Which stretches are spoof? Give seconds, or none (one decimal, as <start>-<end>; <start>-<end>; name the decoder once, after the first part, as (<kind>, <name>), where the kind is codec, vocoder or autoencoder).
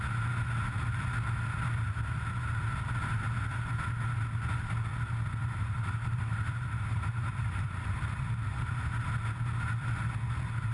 5.4-9.0 (vocoder, BigVGAN v2)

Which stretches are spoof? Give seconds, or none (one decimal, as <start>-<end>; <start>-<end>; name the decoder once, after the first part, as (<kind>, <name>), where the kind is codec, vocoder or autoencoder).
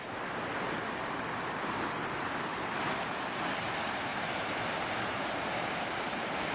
2.5-3.1 (vocoder, BigVGAN v2); 4.1-6.5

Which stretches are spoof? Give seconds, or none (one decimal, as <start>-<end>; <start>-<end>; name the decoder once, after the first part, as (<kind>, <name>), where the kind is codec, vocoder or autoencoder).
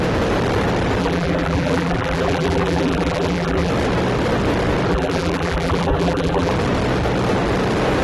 1.0-3.7 (vocoder, BigVGAN v2); 4.9-6.5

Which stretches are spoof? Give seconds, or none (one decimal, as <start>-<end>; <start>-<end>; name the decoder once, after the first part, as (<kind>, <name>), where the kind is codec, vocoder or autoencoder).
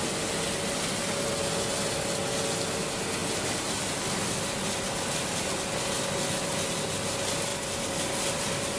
3.2-4.0 (vocoder, BigVGAN v2); 7.5-8.8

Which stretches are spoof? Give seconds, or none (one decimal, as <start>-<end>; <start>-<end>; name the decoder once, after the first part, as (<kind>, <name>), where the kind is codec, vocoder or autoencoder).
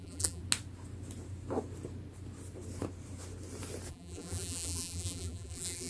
0.0-0.4 (vocoder, BigVGAN v2); 3.9-5.9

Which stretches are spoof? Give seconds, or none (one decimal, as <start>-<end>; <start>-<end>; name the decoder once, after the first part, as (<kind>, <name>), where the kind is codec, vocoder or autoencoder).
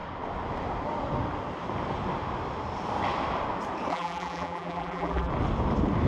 3.9-5.3 (vocoder, BigVGAN v2)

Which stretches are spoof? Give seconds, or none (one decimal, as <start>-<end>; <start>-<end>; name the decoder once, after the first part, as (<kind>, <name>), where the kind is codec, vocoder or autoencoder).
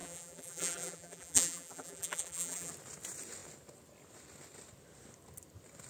0.0-2.7 (vocoder, BigVGAN v2)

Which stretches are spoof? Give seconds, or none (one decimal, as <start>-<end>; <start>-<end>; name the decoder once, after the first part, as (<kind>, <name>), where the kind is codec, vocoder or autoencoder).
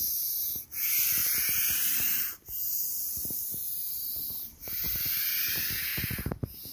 none